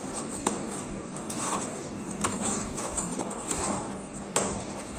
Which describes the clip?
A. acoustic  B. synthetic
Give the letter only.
B